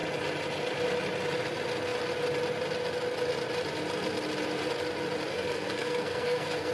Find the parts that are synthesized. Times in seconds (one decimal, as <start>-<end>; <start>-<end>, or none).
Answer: 5.3-6.7